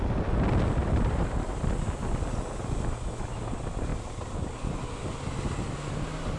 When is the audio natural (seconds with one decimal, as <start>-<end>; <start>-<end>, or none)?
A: 0.0-0.8; 1.5-6.4